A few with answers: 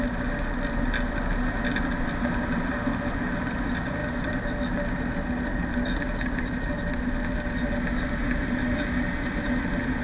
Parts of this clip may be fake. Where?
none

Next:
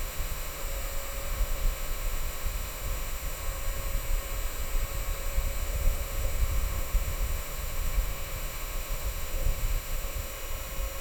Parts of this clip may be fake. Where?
0.0-0.6 (autoencoder, DAC-VAE); 1.3-3.4; 5.6-10.3

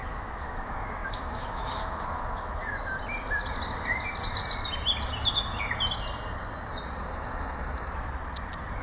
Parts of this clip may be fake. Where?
0.0-2.6 (autoencoder, DAC-VAE); 7.0-7.9

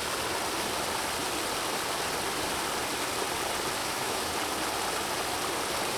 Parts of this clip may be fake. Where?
3.8-4.3 (autoencoder, DAC-VAE)

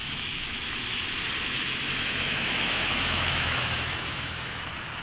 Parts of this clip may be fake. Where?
0.0-1.0 (autoencoder, DAC-VAE); 1.6-4.6